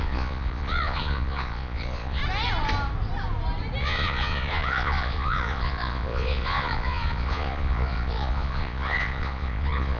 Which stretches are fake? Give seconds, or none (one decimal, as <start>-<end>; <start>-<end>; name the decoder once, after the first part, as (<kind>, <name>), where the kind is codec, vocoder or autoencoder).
0.0-2.2 (vocoder, Vocos); 3.8-10.0